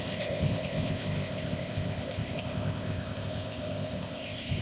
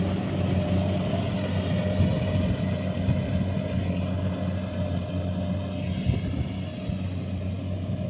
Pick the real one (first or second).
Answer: second